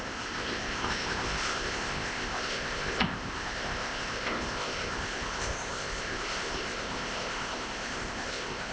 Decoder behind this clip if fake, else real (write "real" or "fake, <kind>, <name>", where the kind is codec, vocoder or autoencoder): fake, codec, ZipCodec